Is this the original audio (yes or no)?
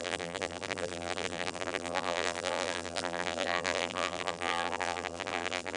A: no